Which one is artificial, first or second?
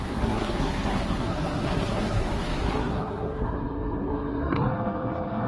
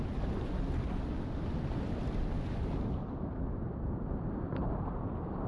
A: first